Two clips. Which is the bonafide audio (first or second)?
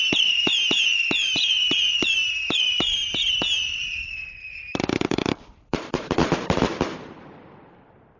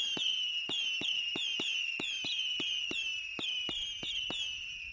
second